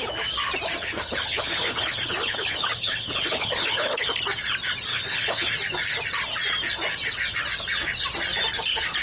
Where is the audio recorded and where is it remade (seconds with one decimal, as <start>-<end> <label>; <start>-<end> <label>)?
0.0-0.8 recorded; 0.8-4.1 remade; 4.1-4.9 recorded; 4.9-5.5 remade; 5.5-9.0 recorded